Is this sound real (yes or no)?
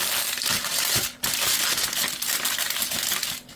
yes